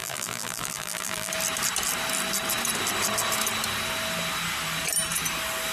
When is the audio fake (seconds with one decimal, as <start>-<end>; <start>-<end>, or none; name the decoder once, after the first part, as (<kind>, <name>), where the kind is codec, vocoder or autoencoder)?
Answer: 0.0-1.3 (vocoder, BigVGAN v2)